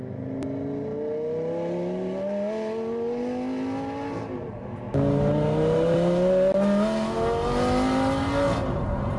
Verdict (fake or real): real